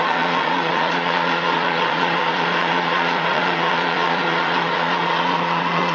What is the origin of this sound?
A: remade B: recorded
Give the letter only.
A